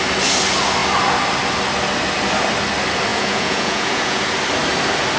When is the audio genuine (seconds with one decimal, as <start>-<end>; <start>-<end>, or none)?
0.0-3.1; 4.2-5.2